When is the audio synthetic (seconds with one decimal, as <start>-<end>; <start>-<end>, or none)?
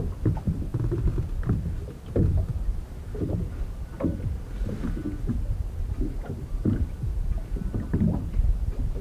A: none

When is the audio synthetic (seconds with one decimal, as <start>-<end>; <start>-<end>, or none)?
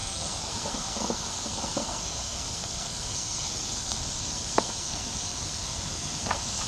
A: 0.0-6.7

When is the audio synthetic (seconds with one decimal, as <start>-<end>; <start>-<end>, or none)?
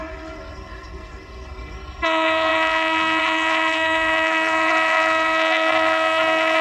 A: 0.0-6.6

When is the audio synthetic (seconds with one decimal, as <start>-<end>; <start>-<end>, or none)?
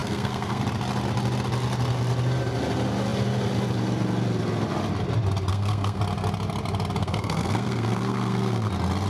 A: 0.0-0.6; 5.5-6.0; 7.0-8.7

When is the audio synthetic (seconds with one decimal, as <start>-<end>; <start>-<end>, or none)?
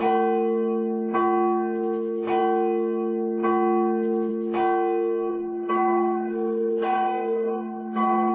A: 5.3-8.3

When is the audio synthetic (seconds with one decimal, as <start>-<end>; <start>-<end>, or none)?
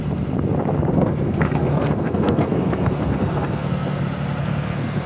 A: 0.9-4.0; 4.4-5.1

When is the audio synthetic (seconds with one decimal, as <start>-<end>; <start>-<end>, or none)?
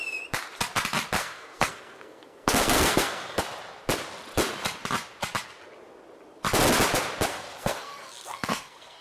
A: 1.2-3.4; 7.3-9.0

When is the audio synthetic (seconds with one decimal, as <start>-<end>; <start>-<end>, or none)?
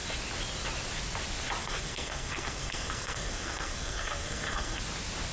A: 1.6-4.8